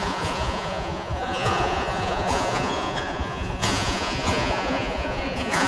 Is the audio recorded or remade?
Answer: remade